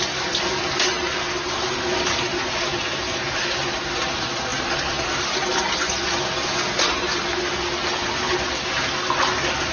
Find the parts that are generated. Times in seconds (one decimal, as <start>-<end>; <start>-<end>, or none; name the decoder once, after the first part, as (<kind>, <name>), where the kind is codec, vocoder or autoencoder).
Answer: none